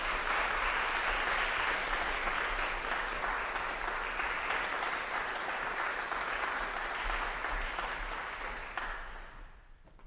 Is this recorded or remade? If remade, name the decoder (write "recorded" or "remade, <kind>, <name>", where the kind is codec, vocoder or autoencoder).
recorded